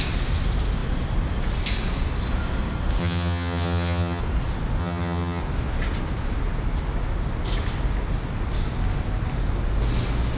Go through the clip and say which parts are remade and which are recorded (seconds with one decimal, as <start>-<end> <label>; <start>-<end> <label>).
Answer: 0.0-3.0 recorded; 3.0-4.2 remade; 4.2-4.8 recorded; 4.8-5.4 remade; 5.4-10.4 recorded